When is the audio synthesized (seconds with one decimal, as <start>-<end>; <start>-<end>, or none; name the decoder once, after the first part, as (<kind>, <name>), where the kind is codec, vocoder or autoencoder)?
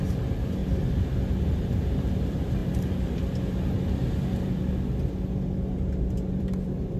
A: 0.0-0.6 (vocoder, BigVGAN v2); 1.4-2.6; 6.3-7.0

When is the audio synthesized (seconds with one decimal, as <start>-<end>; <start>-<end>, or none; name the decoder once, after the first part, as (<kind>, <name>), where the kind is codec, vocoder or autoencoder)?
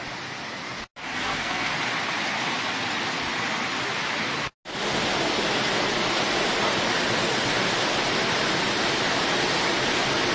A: 1.1-1.7 (codec, SNAC)